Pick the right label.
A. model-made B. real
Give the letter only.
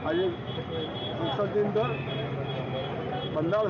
B